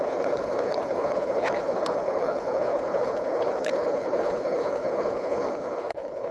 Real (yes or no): no